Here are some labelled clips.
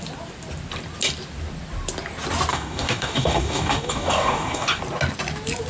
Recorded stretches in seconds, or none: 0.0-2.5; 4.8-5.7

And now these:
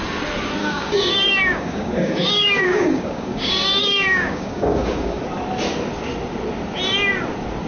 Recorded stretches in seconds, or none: 0.0-0.6; 5.2-7.7